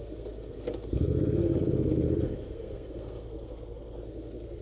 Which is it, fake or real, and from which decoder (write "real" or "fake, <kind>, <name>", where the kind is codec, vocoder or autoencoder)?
fake, codec, SNAC